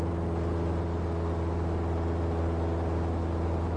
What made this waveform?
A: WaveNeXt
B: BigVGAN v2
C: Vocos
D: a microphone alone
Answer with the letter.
D